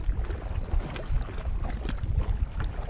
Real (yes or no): yes